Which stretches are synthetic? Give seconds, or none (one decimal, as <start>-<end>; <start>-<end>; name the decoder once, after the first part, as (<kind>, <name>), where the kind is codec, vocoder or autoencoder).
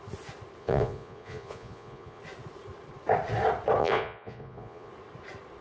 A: 0.6-2.2 (vocoder, Vocos); 3.8-4.9